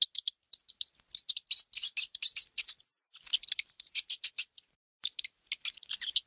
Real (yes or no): yes